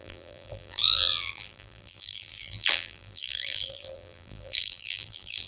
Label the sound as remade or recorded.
remade